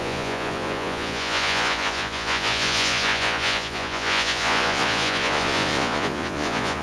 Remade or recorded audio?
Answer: remade